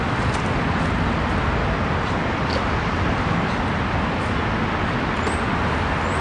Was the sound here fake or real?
real